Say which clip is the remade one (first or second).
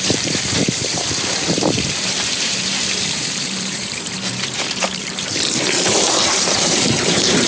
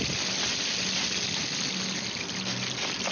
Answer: first